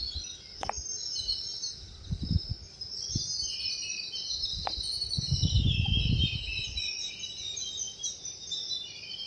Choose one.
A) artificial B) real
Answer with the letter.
B